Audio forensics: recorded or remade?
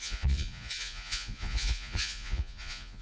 remade